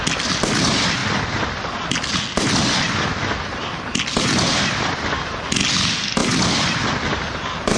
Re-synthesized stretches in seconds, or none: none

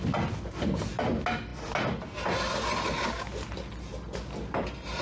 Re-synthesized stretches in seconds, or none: none

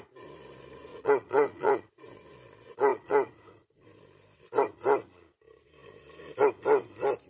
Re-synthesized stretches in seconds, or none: 0.9-1.8 (vocoder, Vocos); 2.9-4.0

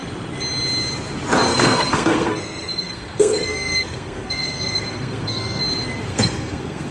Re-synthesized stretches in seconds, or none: 1.5-5.6 (codec, SNAC); 6.1-6.9

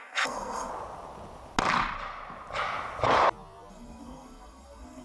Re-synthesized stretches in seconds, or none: 0.0-0.7 (codec, SNAC); 3.7-5.0

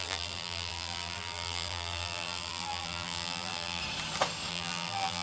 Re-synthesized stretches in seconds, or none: 0.0-3.8 (vocoder, BigVGAN v2); 4.5-5.2